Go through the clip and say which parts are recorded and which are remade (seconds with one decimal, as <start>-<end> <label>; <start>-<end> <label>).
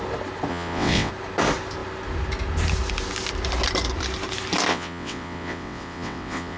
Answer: 0.0-0.5 recorded; 0.5-1.1 remade; 1.1-4.7 recorded; 4.7-6.6 remade